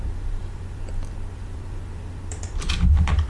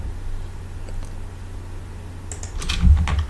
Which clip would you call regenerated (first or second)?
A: first